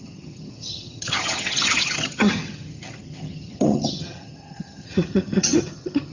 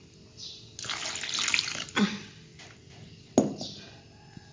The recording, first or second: second